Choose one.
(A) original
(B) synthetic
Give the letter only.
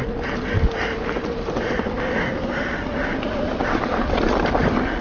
A